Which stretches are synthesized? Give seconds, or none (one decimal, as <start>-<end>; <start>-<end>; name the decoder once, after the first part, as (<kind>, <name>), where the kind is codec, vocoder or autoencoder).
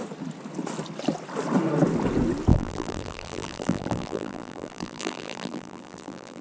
2.5-6.4 (vocoder, BigVGAN v2)